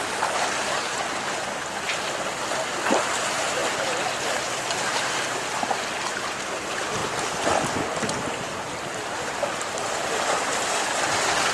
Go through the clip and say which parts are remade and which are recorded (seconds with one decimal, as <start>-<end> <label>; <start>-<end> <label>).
0.0-11.5 recorded